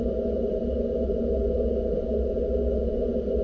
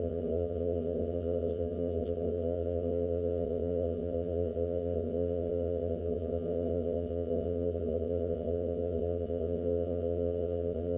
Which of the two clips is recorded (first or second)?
first